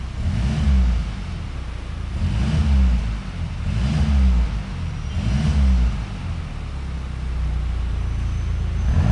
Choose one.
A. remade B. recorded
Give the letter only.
B